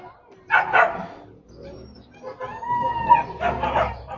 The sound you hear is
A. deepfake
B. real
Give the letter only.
B